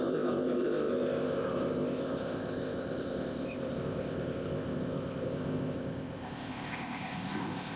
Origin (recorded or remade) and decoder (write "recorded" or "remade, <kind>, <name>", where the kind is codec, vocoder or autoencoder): remade, codec, ZipCodec